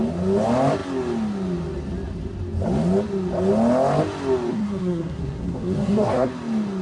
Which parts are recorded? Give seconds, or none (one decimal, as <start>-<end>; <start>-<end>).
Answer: 0.0-4.5; 6.3-6.8